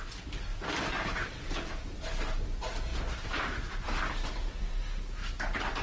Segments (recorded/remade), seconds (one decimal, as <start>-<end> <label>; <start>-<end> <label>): 0.0-0.5 recorded; 0.5-1.7 remade; 1.7-2.9 recorded; 2.9-4.7 remade; 4.7-5.2 recorded; 5.2-5.8 remade